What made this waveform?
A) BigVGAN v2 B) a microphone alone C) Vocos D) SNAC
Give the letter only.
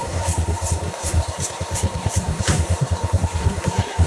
D